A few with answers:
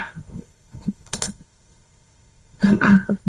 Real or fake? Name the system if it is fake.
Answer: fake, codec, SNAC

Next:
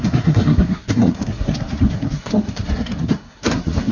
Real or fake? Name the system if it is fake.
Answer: fake, codec, SNAC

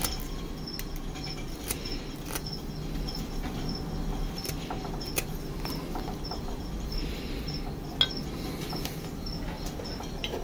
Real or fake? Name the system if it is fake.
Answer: real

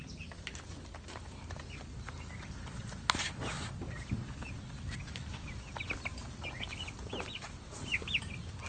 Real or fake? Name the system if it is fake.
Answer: real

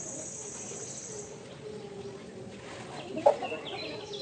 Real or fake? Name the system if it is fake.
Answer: real